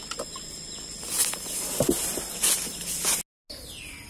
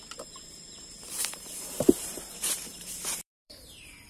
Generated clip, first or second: second